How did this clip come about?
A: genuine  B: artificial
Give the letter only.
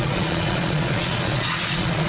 B